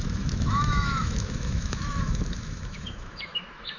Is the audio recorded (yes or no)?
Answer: no